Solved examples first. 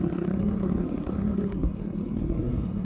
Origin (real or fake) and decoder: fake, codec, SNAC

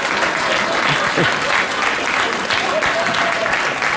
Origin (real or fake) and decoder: real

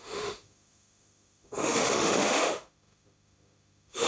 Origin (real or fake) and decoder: fake, autoencoder, DAC-VAE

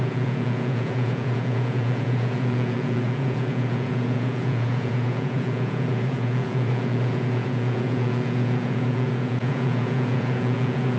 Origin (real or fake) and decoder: fake, vocoder, Vocos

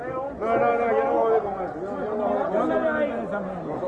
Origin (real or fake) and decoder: real